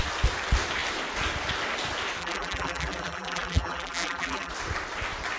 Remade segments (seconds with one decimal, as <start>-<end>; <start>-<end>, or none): 2.2-4.5